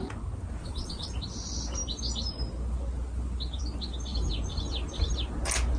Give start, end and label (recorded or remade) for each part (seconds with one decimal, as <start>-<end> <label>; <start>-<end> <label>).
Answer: 0.0-0.6 recorded; 0.6-1.1 remade; 1.1-5.8 recorded